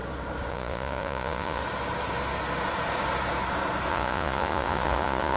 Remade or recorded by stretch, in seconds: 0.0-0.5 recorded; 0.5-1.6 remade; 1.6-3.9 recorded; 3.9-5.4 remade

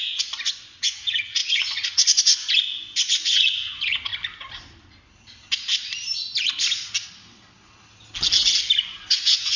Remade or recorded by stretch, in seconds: 0.0-4.1 remade; 4.1-8.8 recorded; 8.8-9.6 remade

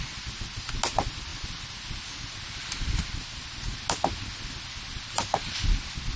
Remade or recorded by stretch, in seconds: 0.0-6.2 recorded

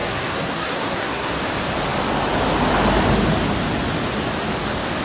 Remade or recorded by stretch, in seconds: 0.0-1.3 remade; 1.3-5.0 recorded

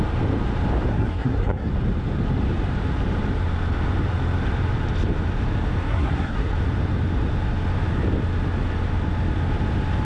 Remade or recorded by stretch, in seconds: 0.0-0.9 recorded; 0.9-1.7 remade; 1.7-5.9 recorded; 5.9-6.5 remade; 6.5-10.0 recorded

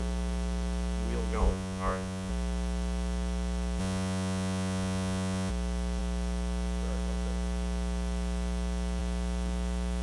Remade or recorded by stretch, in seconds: 0.0-1.4 recorded; 1.4-2.3 remade; 2.3-3.8 recorded; 3.8-5.5 remade; 5.5-10.0 recorded

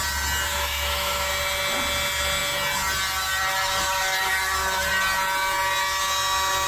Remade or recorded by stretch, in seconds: 0.0-0.5 recorded; 0.5-1.3 remade; 1.3-6.7 recorded